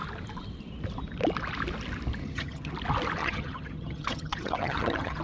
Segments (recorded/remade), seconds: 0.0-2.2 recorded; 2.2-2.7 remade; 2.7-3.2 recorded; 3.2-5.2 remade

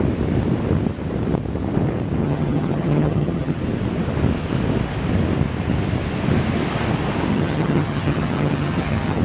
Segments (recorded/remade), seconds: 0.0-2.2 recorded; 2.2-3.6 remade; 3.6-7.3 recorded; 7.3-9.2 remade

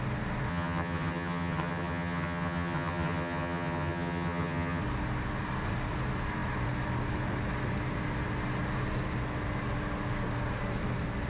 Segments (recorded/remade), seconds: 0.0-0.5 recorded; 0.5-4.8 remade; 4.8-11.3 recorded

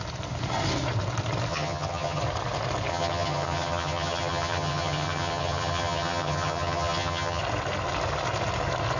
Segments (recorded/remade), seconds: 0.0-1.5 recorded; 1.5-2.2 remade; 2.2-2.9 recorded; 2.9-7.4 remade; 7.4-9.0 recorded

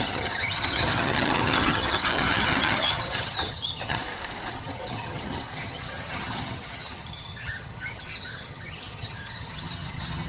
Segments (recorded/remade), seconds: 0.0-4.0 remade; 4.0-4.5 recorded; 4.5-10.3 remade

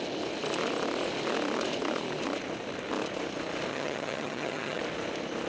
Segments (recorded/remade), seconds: 0.0-3.7 recorded; 3.7-4.8 remade; 4.8-5.5 recorded